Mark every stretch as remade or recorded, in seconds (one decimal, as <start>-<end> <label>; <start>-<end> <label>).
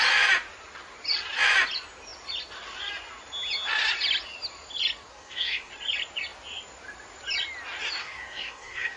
0.0-5.1 recorded; 5.1-5.7 remade; 5.7-8.0 recorded; 8.0-9.0 remade